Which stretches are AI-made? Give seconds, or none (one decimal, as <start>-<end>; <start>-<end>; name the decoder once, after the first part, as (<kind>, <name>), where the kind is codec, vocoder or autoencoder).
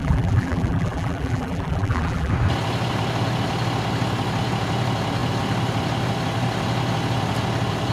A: 0.0-2.3 (vocoder, BigVGAN v2)